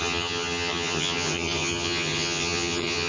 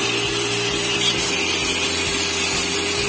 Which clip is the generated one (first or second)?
first